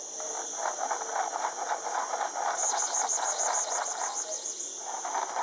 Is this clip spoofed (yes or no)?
no